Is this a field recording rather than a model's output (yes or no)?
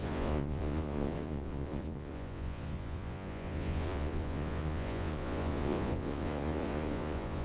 no